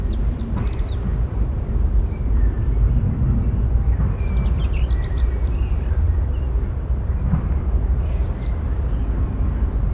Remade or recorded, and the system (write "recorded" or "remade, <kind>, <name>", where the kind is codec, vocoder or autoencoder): remade, vocoder, BigVGAN v2